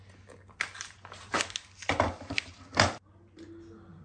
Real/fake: real